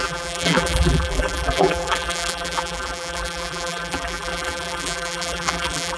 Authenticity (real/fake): fake